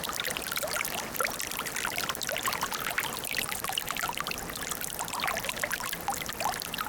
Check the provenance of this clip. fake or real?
real